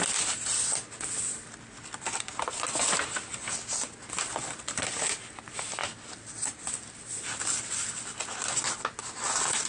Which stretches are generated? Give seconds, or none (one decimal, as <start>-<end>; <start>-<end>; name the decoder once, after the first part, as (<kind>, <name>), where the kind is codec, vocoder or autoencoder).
none